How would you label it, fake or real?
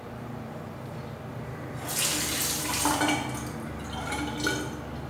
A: real